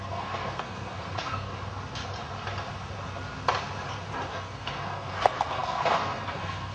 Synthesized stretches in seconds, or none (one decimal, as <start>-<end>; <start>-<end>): 0.0-1.5; 4.3-6.7